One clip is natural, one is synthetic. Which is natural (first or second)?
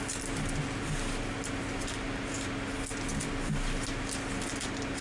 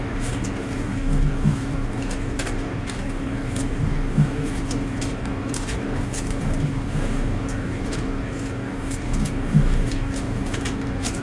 first